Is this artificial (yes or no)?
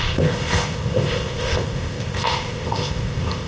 yes